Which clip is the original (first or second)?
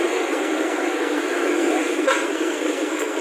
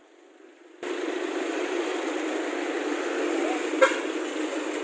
second